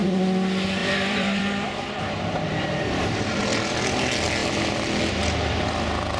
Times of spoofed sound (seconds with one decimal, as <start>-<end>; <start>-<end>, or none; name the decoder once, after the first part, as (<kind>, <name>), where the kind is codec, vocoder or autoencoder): 0.8-3.4 (vocoder, BigVGAN v2)